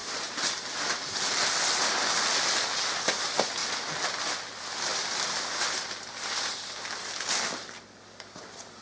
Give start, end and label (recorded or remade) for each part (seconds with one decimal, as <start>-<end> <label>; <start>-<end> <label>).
0.0-8.8 recorded